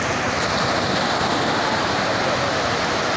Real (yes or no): yes